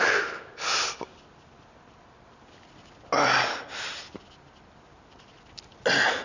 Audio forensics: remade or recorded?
recorded